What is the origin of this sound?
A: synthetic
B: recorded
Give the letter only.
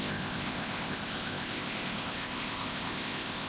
A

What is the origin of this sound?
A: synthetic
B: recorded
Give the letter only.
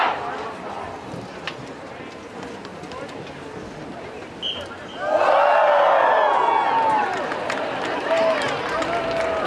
B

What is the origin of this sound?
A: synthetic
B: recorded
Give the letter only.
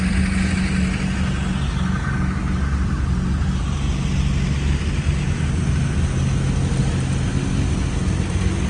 B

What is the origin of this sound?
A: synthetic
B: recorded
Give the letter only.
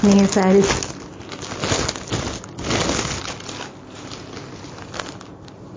B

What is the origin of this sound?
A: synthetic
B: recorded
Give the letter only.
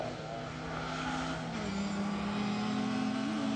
B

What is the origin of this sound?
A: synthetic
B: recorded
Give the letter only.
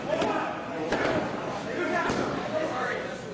B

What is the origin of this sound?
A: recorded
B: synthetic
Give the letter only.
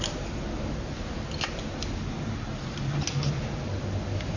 A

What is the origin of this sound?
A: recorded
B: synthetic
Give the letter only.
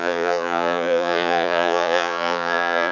B